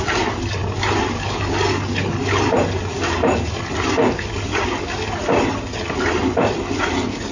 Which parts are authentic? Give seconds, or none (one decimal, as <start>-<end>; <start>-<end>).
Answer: 0.0-7.3